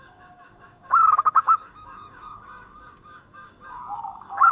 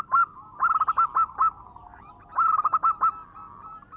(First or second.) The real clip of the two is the second